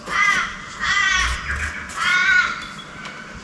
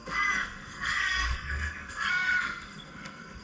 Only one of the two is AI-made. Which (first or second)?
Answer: second